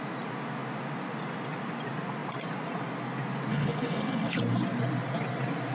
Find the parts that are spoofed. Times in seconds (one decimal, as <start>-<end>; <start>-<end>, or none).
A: 3.5-4.4